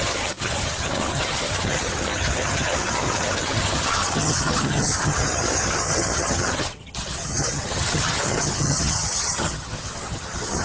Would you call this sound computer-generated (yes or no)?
yes